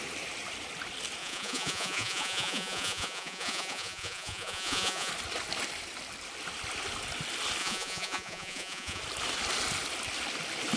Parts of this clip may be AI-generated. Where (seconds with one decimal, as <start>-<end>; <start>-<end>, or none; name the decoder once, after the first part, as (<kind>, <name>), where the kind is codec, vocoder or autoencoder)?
1.2-5.1 (vocoder, Vocos); 7.6-9.0